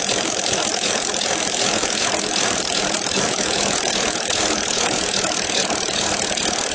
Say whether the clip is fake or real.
fake